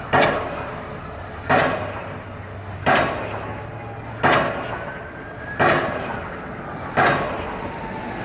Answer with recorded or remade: recorded